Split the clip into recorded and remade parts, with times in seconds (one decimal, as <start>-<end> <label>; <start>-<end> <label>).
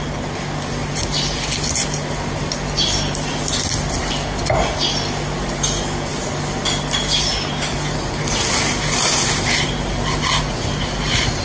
0.0-11.4 recorded